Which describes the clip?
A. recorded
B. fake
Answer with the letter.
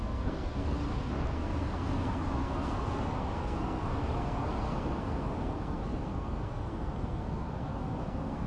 B